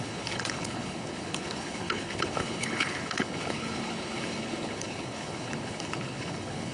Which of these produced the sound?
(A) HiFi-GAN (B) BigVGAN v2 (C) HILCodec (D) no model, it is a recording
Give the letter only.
C